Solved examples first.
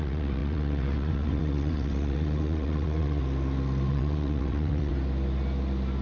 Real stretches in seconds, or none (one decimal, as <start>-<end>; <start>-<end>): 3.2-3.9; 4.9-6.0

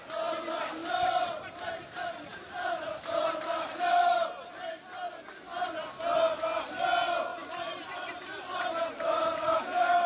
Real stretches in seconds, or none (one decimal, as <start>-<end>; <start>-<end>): 0.0-0.8; 1.5-2.3; 5.0-7.3; 9.6-10.1

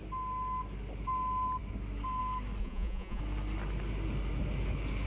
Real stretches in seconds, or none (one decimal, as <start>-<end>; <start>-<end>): 0.0-2.6; 3.2-5.1